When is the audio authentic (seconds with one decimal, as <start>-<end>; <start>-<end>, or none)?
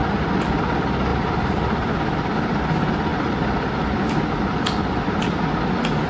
0.0-1.1; 2.6-6.1